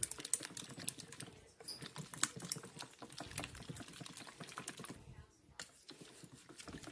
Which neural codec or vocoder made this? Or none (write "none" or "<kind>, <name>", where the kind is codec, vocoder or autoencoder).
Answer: none